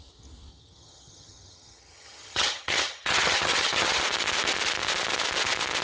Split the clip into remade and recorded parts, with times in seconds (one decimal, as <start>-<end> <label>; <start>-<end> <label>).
0.0-0.5 recorded; 0.5-4.0 remade; 4.0-5.8 recorded